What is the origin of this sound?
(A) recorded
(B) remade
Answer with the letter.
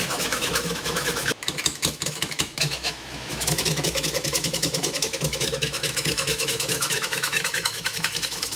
B